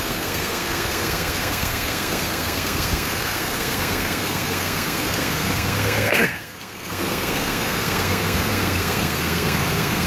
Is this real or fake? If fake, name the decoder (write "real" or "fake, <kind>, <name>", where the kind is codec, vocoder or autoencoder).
fake, codec, SNAC